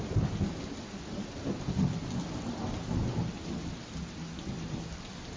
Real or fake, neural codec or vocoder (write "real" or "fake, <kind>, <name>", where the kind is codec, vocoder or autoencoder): real